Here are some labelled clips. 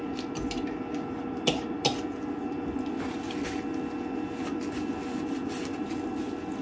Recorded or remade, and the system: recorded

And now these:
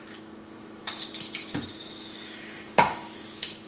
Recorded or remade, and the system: remade, autoencoder, DAC-VAE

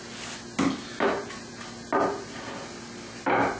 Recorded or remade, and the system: recorded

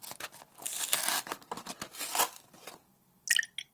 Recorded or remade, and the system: recorded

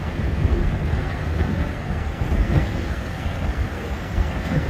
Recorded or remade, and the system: remade, codec, SNAC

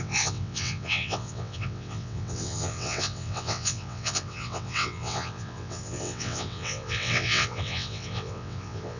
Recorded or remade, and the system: remade, vocoder, WaveNeXt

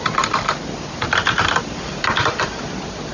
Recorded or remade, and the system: remade, vocoder, BigVGAN v2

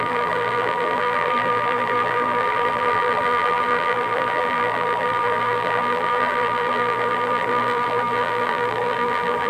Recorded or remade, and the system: remade, vocoder, BigVGAN v2